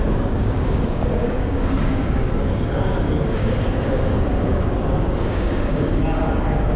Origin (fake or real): fake